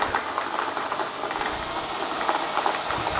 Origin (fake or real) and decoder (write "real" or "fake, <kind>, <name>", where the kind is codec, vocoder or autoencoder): real